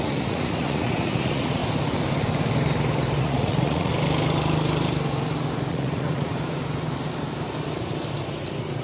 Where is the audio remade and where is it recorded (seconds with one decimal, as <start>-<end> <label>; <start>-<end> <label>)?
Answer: 0.0-1.6 remade; 1.6-3.2 recorded; 3.2-3.9 remade; 3.9-5.7 recorded; 5.7-6.3 remade; 6.3-8.8 recorded

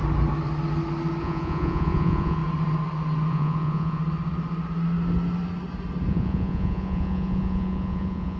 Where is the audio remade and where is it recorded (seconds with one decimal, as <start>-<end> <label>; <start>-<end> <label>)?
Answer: 0.0-1.2 recorded; 1.2-2.4 remade; 2.4-3.3 recorded; 3.3-4.0 remade; 4.0-6.1 recorded; 6.1-8.4 remade

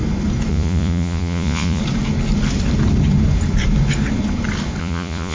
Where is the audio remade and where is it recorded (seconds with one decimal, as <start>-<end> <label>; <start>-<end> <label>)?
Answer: 0.0-0.5 recorded; 0.5-1.8 remade; 1.8-4.8 recorded; 4.8-5.3 remade